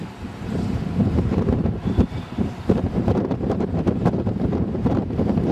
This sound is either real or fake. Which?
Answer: fake